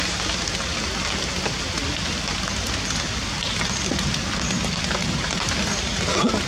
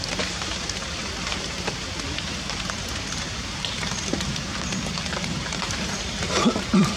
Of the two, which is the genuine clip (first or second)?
first